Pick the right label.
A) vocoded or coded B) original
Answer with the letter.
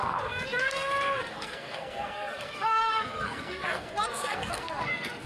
A